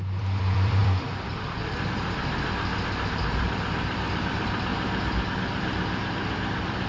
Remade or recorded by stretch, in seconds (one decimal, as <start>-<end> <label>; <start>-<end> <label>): 0.0-4.7 remade; 4.7-5.3 recorded; 5.3-6.9 remade